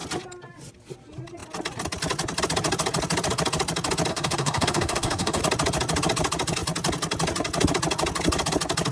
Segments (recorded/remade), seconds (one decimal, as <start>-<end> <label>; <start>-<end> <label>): 0.0-4.1 recorded; 4.1-5.4 remade; 5.4-8.9 recorded